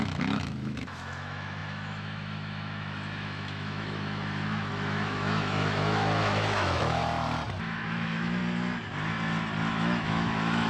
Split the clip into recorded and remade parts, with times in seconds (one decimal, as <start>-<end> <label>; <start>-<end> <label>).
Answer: 0.0-7.0 remade; 7.0-7.6 recorded; 7.6-8.4 remade; 8.4-9.7 recorded; 9.7-10.7 remade

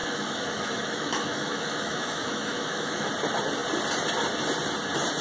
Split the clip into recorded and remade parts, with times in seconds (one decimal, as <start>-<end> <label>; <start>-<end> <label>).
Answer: 0.0-3.1 remade; 3.1-5.2 recorded